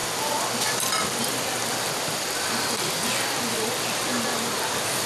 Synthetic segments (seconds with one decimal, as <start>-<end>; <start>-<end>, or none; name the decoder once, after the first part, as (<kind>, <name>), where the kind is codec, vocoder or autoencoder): 0.0-5.1 (vocoder, BigVGAN v2)

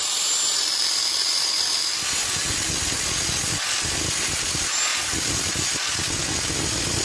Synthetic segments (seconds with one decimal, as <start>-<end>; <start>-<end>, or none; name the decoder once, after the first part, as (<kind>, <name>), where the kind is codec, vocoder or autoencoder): none